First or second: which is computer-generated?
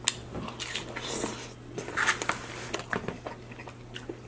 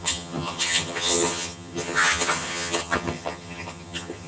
second